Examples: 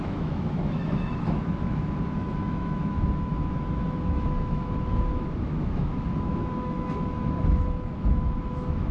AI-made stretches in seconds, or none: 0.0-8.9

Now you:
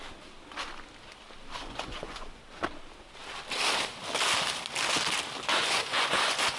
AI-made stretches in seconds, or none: 1.6-2.4; 5.5-6.6